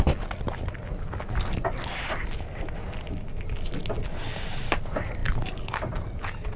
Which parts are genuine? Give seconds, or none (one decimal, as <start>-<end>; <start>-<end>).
0.0-6.6